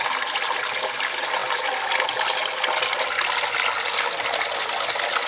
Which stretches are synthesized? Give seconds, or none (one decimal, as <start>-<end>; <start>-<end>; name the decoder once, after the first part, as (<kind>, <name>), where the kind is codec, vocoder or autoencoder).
none